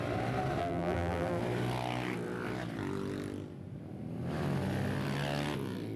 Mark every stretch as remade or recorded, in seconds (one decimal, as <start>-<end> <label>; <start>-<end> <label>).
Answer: 0.0-0.6 recorded; 0.6-1.4 remade; 1.4-6.0 recorded